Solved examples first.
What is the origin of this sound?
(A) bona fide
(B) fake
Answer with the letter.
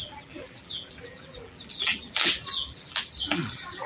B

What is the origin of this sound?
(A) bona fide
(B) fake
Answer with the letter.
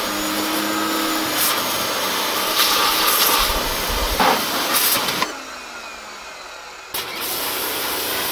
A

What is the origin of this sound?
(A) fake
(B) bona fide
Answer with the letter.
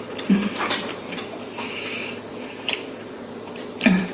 A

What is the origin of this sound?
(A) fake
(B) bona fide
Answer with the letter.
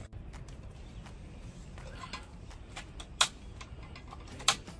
B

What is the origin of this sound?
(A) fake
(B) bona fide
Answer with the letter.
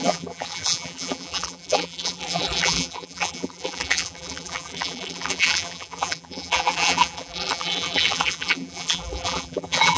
A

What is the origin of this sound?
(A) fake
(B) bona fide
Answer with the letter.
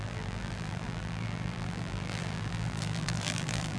A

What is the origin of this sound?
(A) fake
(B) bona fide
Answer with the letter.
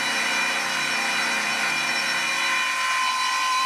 A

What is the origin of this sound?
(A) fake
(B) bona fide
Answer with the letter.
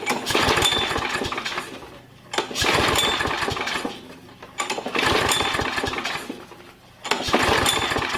A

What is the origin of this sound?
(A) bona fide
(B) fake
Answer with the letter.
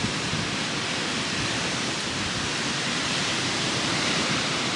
B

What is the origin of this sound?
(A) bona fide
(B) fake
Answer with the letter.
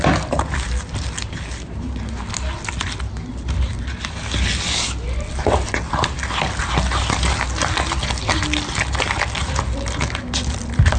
A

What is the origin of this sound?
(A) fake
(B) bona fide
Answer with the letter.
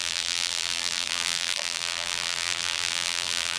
A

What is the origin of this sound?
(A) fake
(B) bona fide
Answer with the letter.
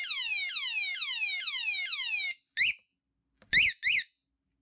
B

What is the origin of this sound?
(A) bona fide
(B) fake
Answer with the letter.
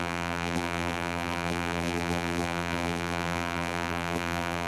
B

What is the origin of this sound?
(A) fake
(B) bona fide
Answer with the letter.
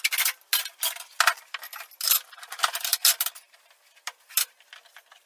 B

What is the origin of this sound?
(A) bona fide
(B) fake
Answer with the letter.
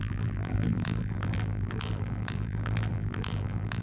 B